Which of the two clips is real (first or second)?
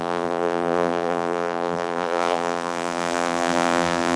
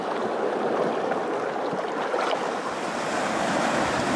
second